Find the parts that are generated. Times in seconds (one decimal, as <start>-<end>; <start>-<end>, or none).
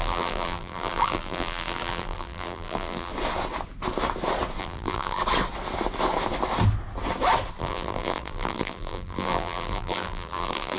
0.0-3.1; 4.6-5.2; 7.6-10.8